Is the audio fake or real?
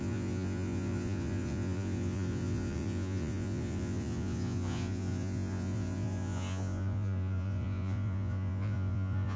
fake